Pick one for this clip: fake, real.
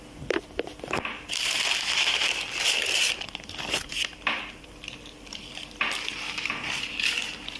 fake